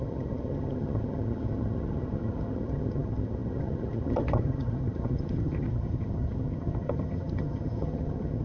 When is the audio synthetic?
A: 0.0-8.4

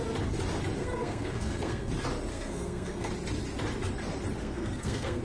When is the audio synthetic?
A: 0.8-1.9; 2.3-3.1; 4.4-5.2

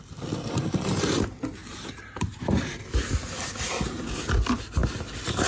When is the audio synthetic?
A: none